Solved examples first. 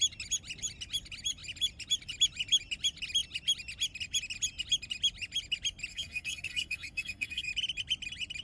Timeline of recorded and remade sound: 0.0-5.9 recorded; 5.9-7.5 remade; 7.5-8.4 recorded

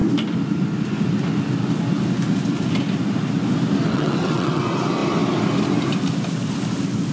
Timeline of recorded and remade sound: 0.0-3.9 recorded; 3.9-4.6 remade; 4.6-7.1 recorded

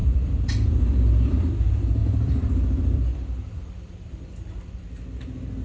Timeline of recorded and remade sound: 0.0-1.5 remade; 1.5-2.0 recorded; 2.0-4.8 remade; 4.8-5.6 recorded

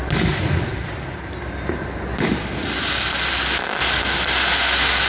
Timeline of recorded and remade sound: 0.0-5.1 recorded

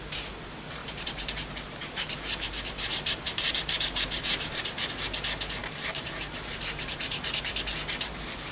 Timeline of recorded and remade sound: 0.0-0.8 recorded; 0.8-4.9 remade; 4.9-5.6 recorded; 5.6-7.4 remade; 7.4-8.5 recorded